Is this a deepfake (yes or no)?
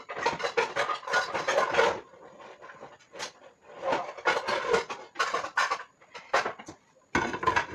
no